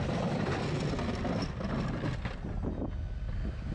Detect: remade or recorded recorded